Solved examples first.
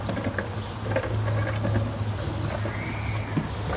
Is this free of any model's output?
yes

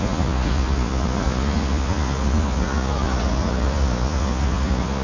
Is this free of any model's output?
no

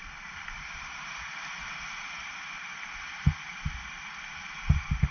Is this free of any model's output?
yes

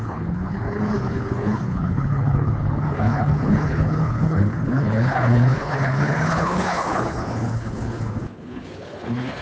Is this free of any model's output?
no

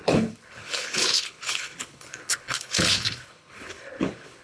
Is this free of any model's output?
no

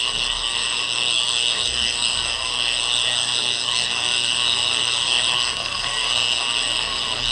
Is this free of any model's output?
no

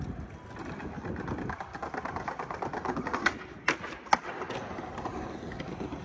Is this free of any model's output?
yes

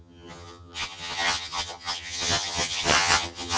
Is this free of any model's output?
no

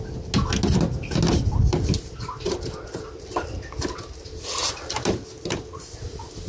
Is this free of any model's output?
yes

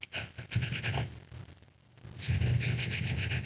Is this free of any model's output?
yes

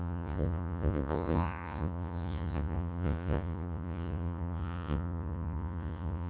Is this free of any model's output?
no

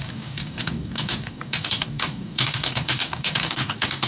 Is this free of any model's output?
no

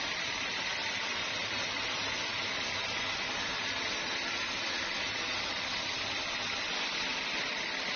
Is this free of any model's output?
no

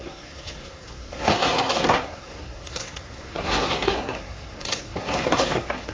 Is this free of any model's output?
no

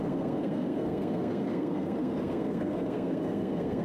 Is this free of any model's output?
no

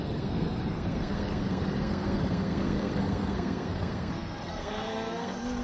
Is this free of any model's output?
no